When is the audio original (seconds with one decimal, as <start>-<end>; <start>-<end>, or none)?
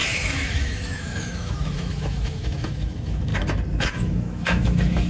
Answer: 3.3-3.9